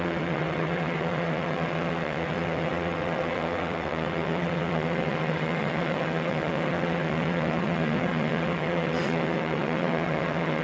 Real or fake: fake